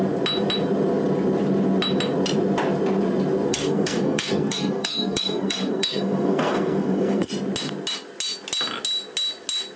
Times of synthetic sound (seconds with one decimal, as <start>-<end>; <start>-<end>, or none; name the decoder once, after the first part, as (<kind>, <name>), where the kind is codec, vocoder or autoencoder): 3.5-7.3 (codec, SNAC)